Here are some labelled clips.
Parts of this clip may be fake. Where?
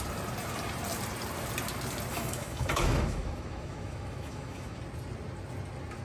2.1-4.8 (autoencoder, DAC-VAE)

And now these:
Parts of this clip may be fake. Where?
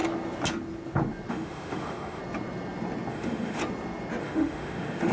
1.3-2.2 (autoencoder, DAC-VAE); 3.1-3.6; 4.2-5.1